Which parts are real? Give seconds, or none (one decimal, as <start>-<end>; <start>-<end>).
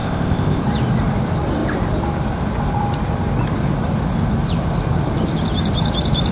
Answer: 0.6-6.3